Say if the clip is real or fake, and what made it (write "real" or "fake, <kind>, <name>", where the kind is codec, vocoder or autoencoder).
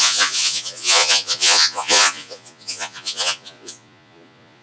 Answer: fake, vocoder, Vocos